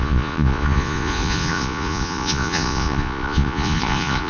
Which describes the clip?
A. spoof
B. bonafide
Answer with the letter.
A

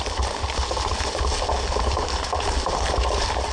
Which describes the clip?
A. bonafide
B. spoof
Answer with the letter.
A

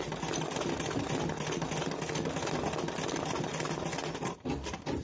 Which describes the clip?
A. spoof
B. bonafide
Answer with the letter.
B